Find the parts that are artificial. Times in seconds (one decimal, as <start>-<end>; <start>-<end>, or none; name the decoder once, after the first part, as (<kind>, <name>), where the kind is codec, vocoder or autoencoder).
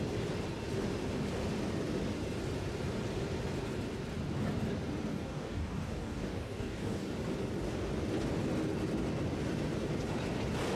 5.1-7.1 (codec, DAC)